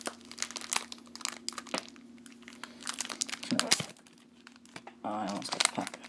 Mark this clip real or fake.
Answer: real